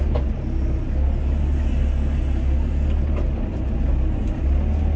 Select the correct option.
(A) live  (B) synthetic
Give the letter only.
A